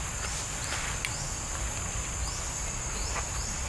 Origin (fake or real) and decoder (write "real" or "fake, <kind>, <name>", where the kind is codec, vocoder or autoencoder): real